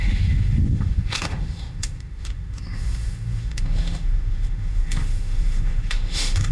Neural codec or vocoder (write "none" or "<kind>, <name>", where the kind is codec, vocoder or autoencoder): autoencoder, DAC-VAE